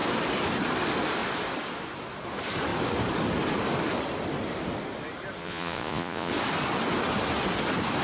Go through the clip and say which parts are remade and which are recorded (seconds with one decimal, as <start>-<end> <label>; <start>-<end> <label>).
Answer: 0.0-5.4 recorded; 5.4-6.3 remade; 6.3-8.0 recorded